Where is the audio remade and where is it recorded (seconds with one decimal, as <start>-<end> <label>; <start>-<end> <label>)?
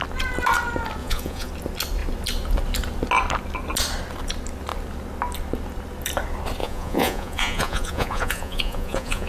0.0-1.0 recorded; 1.0-1.5 remade; 1.5-6.6 recorded; 6.6-9.3 remade